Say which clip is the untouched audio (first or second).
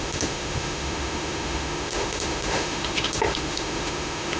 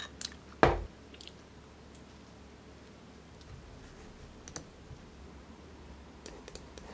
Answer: second